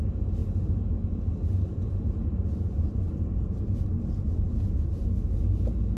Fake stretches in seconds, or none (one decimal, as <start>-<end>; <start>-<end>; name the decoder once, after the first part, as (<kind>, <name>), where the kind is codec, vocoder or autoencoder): 0.4-4.0 (vocoder, BigVGAN v2)